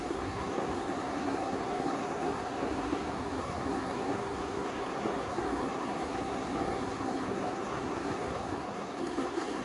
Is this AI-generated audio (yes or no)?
yes